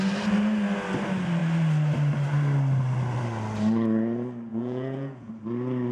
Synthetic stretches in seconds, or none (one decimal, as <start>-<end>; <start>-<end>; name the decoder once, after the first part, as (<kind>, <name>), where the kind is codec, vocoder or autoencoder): 4.5-5.3 (vocoder, Vocos)

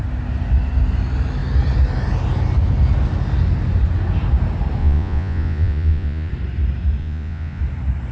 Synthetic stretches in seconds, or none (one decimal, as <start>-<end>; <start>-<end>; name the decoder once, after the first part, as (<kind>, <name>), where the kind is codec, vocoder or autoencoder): 4.8-6.3 (vocoder, Vocos); 7.0-7.6

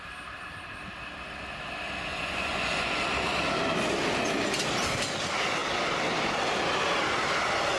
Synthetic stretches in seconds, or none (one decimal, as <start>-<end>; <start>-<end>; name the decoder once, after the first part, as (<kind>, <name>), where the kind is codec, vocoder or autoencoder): 2.1-3.0 (vocoder, Vocos)

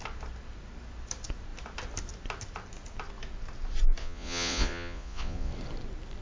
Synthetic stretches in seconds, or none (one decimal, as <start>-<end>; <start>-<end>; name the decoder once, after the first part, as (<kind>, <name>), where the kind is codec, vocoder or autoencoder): 4.0-5.5 (vocoder, Vocos)